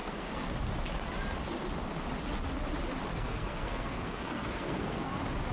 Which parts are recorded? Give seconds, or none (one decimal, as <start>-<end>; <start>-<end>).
0.5-3.1; 5.1-5.5